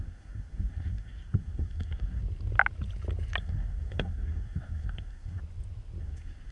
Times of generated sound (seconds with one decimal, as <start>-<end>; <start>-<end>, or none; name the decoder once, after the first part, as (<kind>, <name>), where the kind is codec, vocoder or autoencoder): 0.0-2.2 (codec, SNAC); 3.4-5.4; 6.0-6.5